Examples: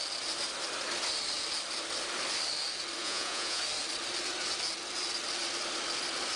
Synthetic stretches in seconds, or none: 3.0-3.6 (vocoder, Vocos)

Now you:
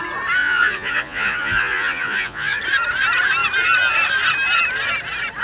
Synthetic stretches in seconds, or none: 0.4-2.6 (vocoder, Vocos)

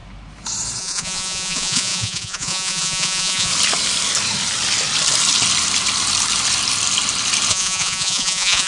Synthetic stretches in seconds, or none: 0.8-3.5 (vocoder, Vocos); 7.5-8.7

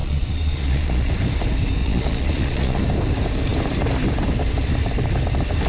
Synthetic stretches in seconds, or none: 0.0-1.1 (vocoder, Vocos); 1.8-2.8

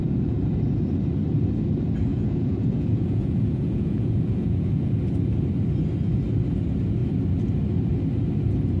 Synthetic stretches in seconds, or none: 0.0-0.5 (vocoder, Vocos); 2.1-4.9